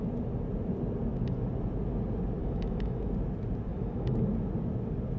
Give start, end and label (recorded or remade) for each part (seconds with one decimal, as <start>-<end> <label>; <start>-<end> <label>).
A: 0.0-2.4 recorded; 2.4-3.1 remade; 3.1-3.7 recorded; 3.7-4.3 remade; 4.3-5.2 recorded